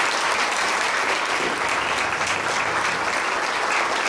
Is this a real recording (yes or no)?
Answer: yes